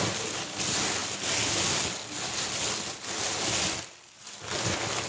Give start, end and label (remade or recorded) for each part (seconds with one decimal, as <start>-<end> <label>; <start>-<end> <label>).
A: 0.0-5.1 recorded